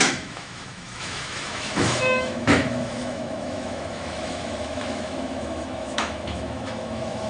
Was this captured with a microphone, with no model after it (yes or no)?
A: no